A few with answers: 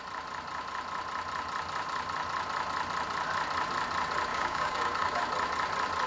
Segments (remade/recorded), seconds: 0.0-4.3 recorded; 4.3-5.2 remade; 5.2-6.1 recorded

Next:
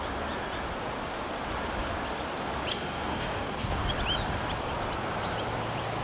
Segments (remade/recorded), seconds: 0.0-2.7 recorded; 2.7-3.9 remade; 3.9-6.0 recorded

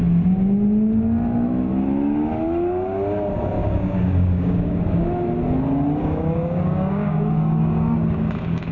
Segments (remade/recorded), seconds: 0.0-3.6 recorded; 3.6-5.0 remade; 5.0-6.0 recorded; 6.0-8.7 remade

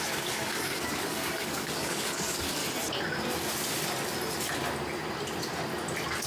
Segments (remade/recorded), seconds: 0.0-2.6 remade; 2.6-6.3 recorded

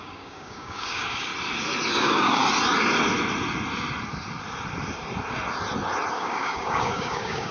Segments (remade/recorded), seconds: 0.0-1.3 remade; 1.3-2.0 recorded; 2.0-2.4 remade; 2.4-6.1 recorded; 6.1-7.5 remade